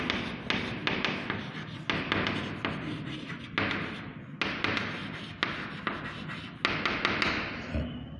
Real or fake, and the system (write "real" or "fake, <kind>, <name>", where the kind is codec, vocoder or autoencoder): real